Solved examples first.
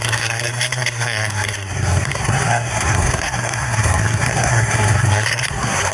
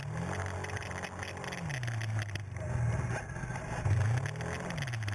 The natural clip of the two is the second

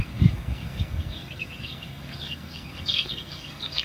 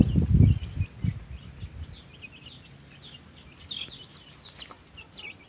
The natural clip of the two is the second